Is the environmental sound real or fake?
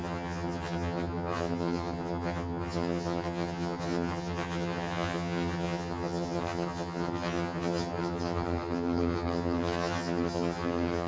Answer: fake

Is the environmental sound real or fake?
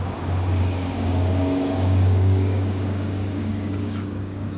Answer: fake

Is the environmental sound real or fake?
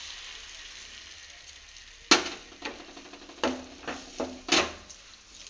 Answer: real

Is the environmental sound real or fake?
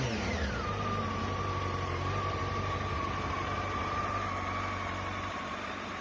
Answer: real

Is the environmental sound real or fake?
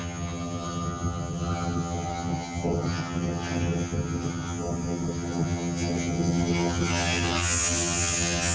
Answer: fake